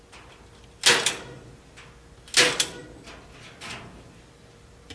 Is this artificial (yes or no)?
no